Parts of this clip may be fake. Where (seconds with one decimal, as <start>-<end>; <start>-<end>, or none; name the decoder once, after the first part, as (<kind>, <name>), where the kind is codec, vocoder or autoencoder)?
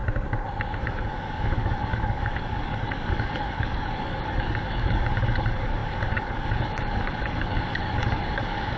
0.8-8.8 (codec, DAC)